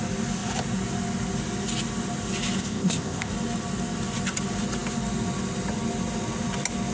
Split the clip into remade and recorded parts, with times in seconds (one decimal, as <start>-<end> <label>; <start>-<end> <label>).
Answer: 0.0-2.6 recorded; 2.6-3.3 remade; 3.3-6.9 recorded